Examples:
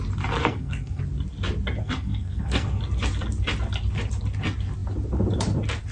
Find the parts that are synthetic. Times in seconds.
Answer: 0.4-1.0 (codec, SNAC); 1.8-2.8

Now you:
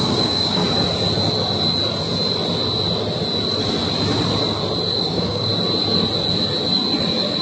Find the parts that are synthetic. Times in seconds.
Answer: 0.0-0.6 (codec, DAC); 5.0-5.5

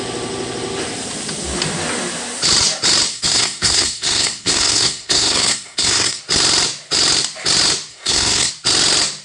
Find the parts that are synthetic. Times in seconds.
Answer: 3.1-6.2 (codec, SNAC); 7.9-8.5